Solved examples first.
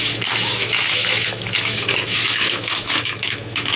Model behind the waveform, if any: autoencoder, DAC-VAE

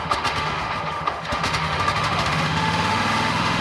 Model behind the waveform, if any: autoencoder, DAC-VAE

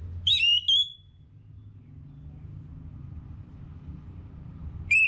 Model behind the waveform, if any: none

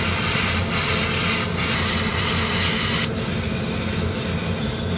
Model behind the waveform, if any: none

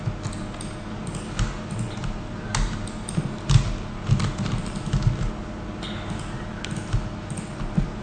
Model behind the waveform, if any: none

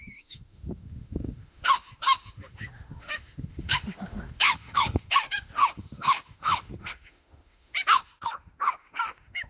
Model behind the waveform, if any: autoencoder, DAC-VAE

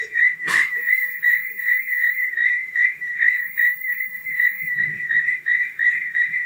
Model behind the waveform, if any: autoencoder, DAC-VAE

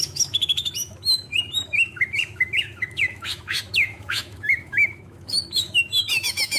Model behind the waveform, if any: autoencoder, DAC-VAE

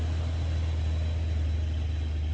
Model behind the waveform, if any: none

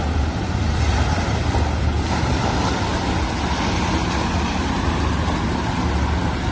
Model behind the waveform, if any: none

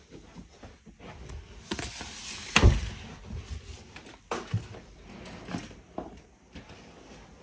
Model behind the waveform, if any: none